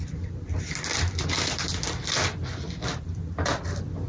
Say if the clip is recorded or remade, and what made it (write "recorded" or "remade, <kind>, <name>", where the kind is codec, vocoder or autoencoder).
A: recorded